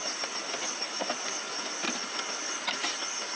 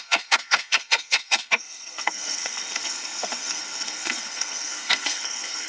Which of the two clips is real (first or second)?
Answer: first